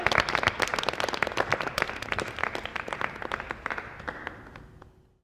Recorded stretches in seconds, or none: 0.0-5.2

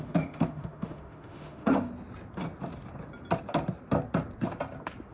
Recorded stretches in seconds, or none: 1.9-5.1

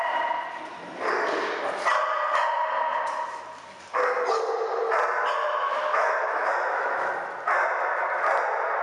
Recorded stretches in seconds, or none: 0.0-5.4; 7.1-8.8

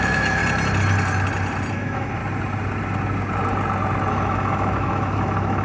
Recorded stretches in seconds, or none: 0.4-1.7; 2.2-4.1

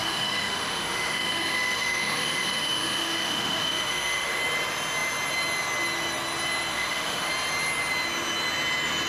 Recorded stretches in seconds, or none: 4.4-6.7; 7.3-9.1